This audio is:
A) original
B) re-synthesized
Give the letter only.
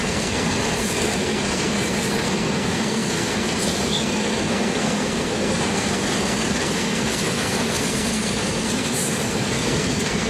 B